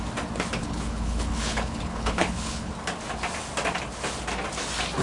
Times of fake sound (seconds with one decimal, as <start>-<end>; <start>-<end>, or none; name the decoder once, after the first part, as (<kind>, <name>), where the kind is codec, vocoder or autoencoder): 0.6-2.7 (codec, HILCodec)